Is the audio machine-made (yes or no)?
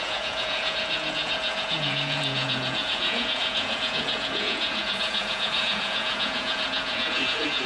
yes